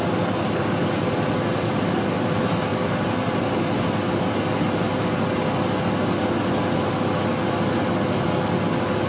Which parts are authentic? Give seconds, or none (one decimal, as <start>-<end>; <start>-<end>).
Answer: 0.0-9.1